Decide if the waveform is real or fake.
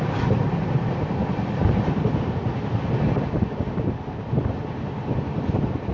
real